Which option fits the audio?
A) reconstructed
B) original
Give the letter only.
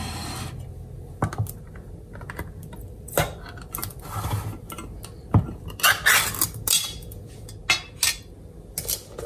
B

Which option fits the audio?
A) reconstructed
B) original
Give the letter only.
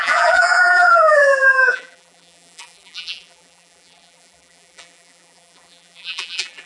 A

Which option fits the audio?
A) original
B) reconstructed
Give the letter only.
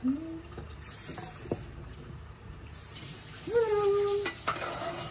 B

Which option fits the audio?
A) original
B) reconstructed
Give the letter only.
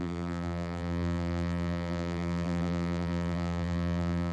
B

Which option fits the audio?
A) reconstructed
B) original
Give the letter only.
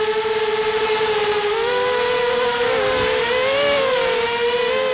A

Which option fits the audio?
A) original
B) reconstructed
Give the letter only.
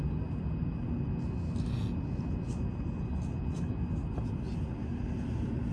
A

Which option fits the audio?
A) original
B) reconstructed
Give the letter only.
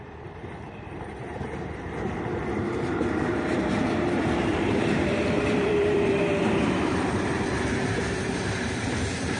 B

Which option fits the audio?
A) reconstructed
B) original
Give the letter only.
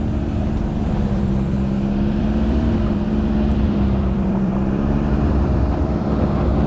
A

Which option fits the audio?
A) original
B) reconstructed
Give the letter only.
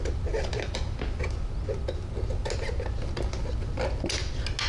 A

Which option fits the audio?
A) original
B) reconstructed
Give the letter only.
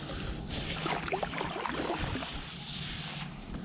A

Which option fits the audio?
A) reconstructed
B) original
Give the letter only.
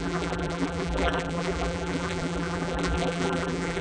A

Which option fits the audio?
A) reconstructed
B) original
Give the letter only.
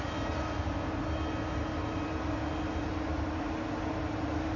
B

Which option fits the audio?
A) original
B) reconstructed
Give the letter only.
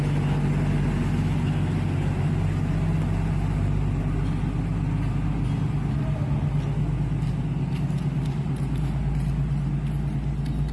A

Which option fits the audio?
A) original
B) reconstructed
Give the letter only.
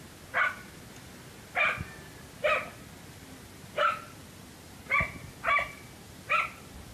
A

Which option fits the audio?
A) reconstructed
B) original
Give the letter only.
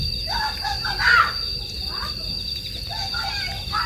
B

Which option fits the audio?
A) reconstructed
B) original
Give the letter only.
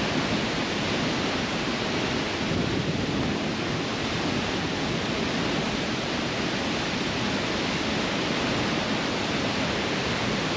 B